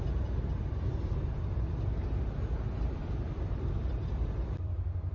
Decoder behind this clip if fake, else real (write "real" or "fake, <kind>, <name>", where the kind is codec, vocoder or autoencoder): real